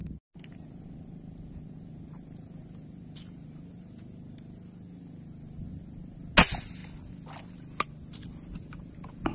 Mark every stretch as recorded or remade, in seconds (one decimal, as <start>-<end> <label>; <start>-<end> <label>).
0.0-9.3 recorded